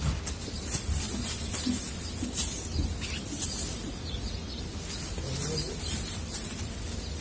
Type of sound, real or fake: real